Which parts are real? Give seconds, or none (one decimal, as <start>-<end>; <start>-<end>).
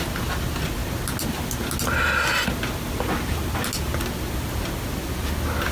0.0-5.7